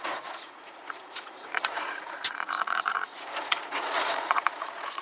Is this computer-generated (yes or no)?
yes